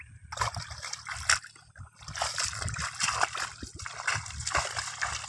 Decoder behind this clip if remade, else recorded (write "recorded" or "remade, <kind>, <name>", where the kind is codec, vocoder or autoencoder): recorded